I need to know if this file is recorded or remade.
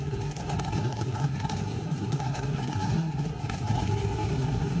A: remade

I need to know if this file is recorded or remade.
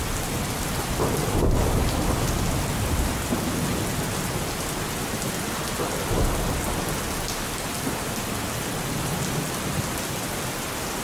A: recorded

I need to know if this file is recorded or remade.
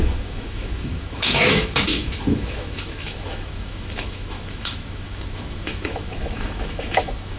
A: remade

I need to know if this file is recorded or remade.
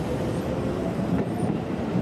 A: remade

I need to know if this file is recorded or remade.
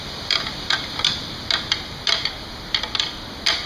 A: recorded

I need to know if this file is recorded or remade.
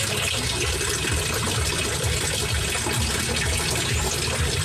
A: recorded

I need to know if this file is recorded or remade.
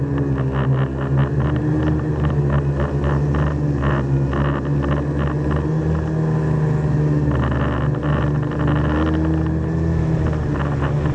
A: recorded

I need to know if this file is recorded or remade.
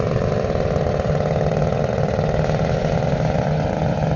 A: recorded